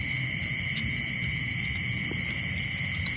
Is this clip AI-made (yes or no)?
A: no